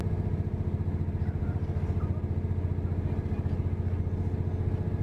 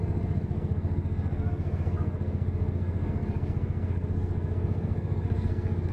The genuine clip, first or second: first